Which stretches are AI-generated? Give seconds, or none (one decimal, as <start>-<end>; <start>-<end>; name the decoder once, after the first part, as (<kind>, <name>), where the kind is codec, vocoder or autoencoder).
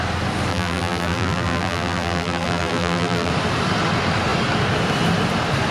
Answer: 0.5-3.3 (vocoder, BigVGAN v2)